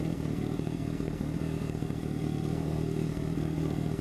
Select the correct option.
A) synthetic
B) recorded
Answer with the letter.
A